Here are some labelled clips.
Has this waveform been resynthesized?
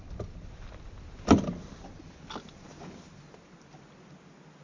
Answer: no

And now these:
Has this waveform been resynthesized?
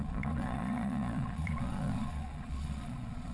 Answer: yes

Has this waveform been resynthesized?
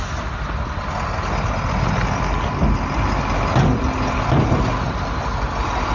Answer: no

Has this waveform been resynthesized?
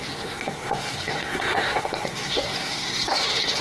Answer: yes